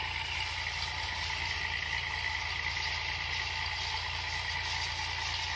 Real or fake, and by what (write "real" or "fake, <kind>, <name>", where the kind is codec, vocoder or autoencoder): real